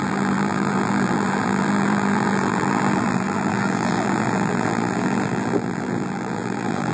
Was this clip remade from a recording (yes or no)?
yes